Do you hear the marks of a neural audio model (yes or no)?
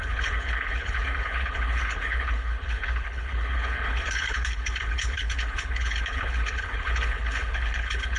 yes